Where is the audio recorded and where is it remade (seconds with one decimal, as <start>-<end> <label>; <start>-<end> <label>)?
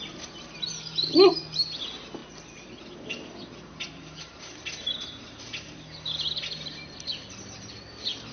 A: 0.0-8.3 recorded